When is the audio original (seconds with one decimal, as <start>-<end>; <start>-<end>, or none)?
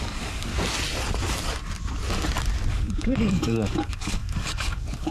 0.5-2.7